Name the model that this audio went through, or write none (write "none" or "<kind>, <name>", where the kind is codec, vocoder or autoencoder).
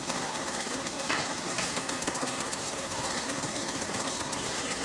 codec, SNAC